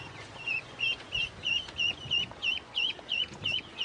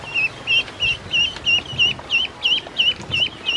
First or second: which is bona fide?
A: second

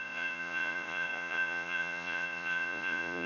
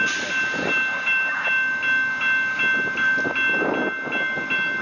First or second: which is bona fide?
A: second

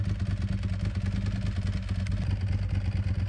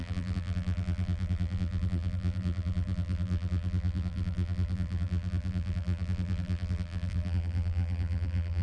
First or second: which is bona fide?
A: first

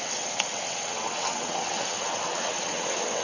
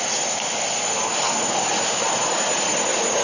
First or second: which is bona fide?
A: second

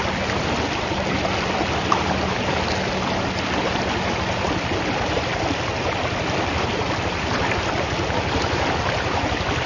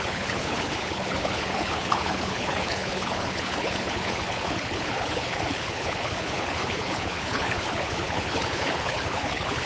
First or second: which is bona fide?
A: first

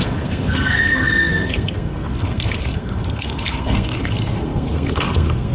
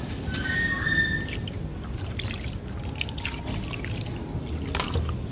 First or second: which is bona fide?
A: second